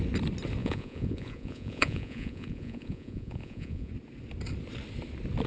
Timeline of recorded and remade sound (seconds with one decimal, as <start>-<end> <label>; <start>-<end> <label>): 0.0-0.6 recorded; 0.6-3.9 remade; 3.9-5.5 recorded